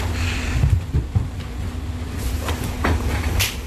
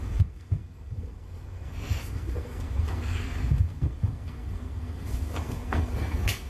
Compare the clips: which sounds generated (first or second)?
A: second